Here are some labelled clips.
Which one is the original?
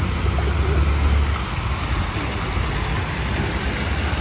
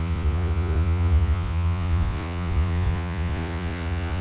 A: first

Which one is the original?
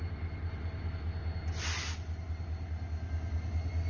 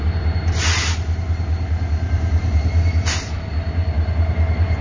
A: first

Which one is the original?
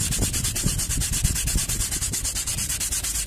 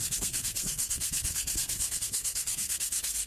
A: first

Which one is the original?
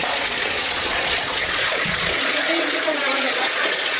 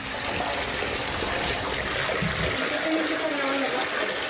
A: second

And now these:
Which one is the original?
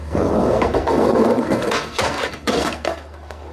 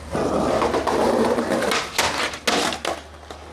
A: second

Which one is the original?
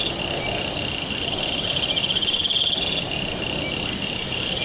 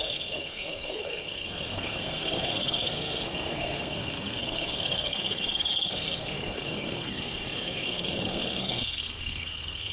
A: first